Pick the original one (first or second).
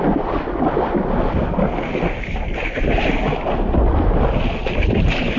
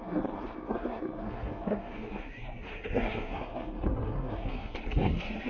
first